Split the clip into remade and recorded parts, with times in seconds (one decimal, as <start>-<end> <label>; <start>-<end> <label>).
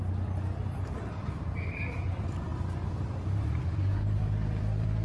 0.0-0.6 recorded; 0.6-2.5 remade; 2.5-3.7 recorded; 3.7-5.0 remade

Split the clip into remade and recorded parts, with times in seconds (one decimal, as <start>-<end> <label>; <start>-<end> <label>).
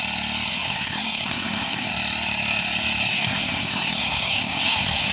0.0-0.5 recorded; 0.5-1.9 remade; 1.9-3.1 recorded; 3.1-5.1 remade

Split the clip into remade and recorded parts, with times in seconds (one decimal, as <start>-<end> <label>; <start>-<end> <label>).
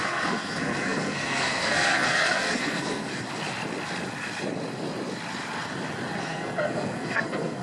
0.0-3.1 remade; 3.1-6.2 recorded; 6.2-7.6 remade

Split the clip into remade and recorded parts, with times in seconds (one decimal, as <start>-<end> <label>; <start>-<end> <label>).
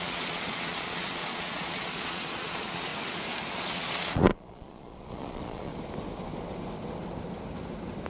0.0-2.9 remade; 2.9-3.5 recorded; 3.5-5.7 remade; 5.7-8.1 recorded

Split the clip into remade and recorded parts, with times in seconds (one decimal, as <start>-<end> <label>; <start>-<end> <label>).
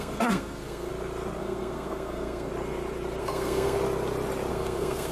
0.0-0.9 remade; 0.9-1.4 recorded; 1.4-2.5 remade; 2.5-3.2 recorded; 3.2-3.8 remade; 3.8-4.5 recorded; 4.5-5.1 remade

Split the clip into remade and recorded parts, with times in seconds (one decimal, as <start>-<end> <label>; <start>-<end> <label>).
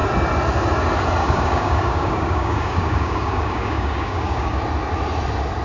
0.0-1.2 recorded; 1.2-4.6 remade; 4.6-5.6 recorded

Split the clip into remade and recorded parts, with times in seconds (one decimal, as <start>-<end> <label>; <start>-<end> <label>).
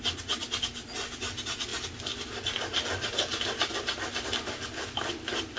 0.0-5.6 recorded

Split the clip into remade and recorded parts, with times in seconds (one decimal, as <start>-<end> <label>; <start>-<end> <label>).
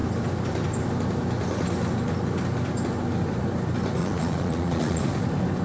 0.0-4.0 recorded; 4.0-5.0 remade; 5.0-5.6 recorded